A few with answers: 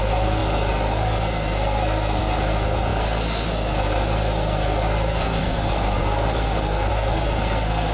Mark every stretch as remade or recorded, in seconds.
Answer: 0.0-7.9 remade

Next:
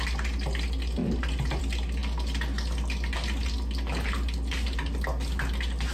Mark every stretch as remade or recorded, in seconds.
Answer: 0.0-5.9 recorded

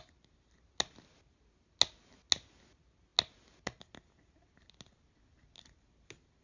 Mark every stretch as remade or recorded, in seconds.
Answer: 0.0-6.4 recorded

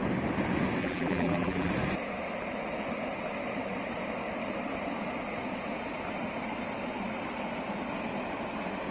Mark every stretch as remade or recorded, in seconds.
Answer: 0.0-0.8 recorded; 0.8-1.7 remade; 1.7-8.9 recorded

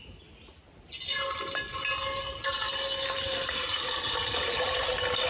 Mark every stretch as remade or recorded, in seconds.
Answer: 0.0-5.3 recorded

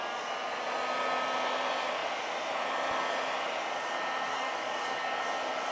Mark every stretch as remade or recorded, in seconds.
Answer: 0.0-4.3 recorded; 4.3-5.2 remade; 5.2-5.7 recorded

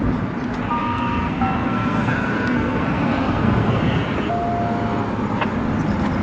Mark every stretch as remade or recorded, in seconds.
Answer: 0.0-0.8 recorded; 0.8-3.8 remade; 3.8-6.2 recorded

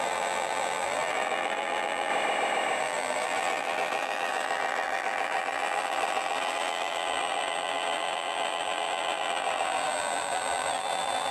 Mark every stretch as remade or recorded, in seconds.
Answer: 0.0-2.1 remade; 2.1-2.8 recorded; 2.8-11.3 remade